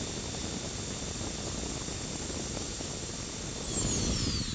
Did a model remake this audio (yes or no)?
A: no